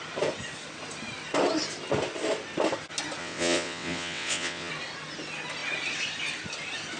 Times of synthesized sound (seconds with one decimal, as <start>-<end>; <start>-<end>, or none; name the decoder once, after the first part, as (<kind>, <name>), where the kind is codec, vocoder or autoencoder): 3.2-4.7 (vocoder, WaveNeXt)